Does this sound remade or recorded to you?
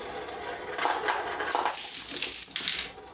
recorded